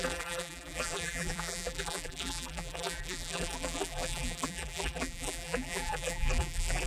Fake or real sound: fake